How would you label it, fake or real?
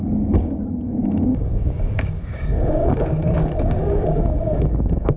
fake